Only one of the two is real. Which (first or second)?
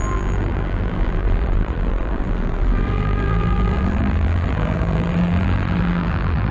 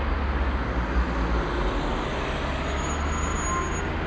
second